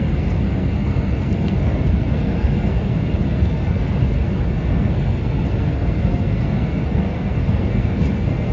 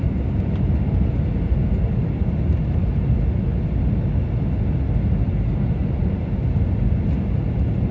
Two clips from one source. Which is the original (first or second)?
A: second